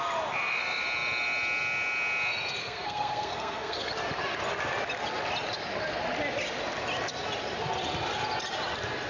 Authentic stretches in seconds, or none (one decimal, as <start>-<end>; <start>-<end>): 0.0-2.6; 3.9-9.1